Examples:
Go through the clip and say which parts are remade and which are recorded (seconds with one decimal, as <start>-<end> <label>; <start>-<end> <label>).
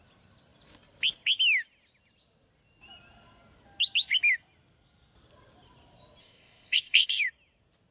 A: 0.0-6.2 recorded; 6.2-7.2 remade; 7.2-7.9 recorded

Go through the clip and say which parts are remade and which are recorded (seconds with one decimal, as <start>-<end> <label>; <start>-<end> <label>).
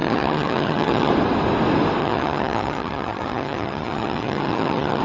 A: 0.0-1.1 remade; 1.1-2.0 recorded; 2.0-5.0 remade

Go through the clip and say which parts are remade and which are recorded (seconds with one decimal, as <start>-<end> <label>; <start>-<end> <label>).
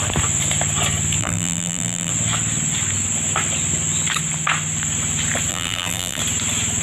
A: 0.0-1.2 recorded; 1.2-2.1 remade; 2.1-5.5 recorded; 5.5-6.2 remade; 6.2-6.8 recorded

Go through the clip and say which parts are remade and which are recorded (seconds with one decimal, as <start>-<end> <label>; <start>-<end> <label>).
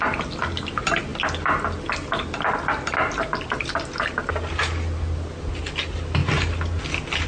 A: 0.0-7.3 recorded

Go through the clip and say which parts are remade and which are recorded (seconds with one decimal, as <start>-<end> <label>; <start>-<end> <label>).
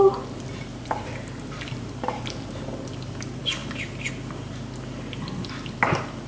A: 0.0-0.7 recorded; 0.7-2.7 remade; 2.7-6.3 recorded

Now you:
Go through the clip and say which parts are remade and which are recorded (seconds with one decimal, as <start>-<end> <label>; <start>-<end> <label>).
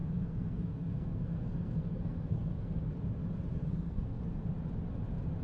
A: 0.0-2.8 remade; 2.8-3.6 recorded; 3.6-4.2 remade; 4.2-5.4 recorded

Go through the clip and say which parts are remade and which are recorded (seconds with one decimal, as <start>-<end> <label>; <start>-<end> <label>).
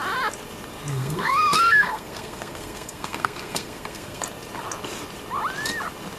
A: 0.0-0.9 recorded; 0.9-4.2 remade; 4.2-6.2 recorded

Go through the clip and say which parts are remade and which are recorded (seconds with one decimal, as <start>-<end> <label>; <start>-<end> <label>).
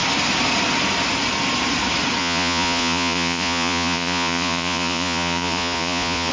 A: 0.0-2.2 recorded; 2.2-6.3 remade